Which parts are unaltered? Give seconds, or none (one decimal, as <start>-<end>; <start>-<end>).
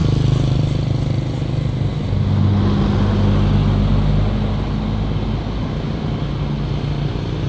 0.0-7.5